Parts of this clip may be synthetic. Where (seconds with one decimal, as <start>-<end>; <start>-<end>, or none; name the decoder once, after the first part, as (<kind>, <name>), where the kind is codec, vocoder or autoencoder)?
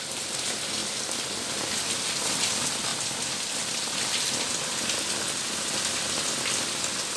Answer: none